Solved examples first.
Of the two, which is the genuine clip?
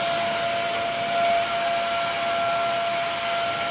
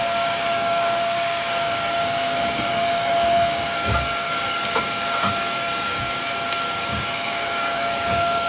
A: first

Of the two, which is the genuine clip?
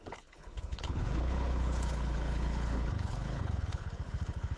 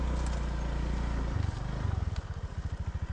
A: second